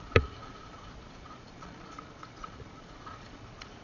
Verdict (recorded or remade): remade